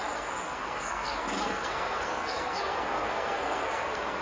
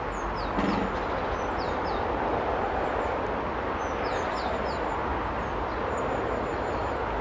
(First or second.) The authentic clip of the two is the second